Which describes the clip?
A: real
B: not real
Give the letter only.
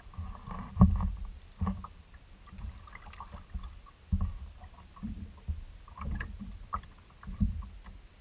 A